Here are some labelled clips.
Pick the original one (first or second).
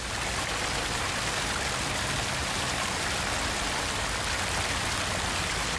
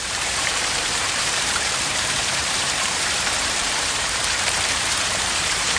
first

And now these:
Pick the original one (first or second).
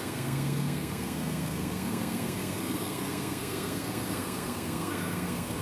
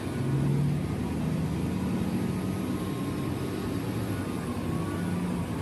second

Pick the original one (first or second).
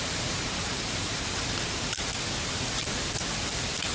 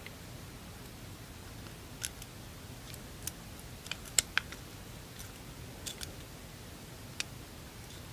second